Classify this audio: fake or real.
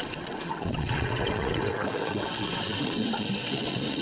fake